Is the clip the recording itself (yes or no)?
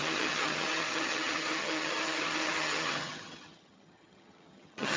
no